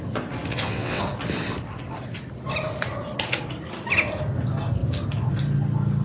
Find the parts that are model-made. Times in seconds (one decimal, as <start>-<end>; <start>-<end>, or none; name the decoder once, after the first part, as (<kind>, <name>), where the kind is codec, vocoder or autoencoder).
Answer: 0.5-1.0 (vocoder, WaveNeXt)